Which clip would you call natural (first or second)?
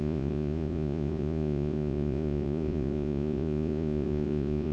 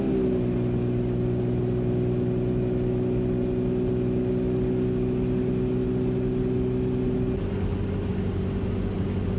second